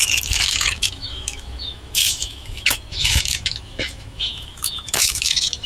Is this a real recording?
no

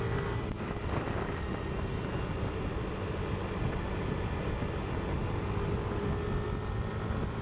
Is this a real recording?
yes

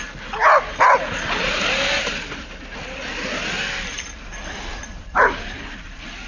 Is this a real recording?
yes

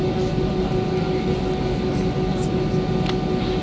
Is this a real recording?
yes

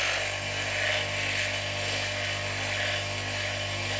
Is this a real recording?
yes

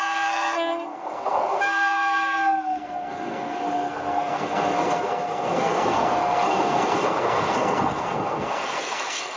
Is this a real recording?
no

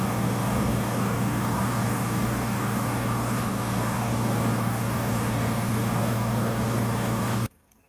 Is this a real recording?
no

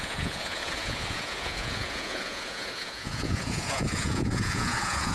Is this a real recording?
no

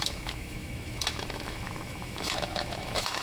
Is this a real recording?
no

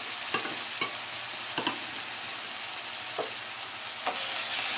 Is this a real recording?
yes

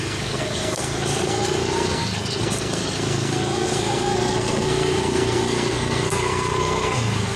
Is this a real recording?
no